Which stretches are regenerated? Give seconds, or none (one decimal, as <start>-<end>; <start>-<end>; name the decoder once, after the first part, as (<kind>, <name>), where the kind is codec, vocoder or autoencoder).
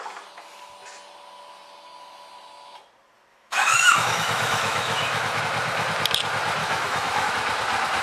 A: 3.3-5.4 (autoencoder, DAC-VAE); 6.6-7.3